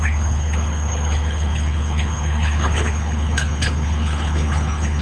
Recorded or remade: remade